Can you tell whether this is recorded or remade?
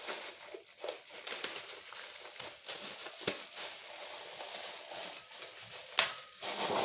recorded